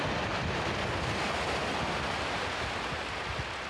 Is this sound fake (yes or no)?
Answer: no